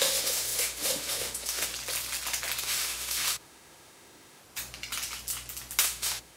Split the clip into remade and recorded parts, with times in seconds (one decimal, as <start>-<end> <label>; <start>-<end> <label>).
0.0-1.7 remade; 1.7-2.6 recorded; 2.6-4.4 remade; 4.4-5.8 recorded; 5.8-6.4 remade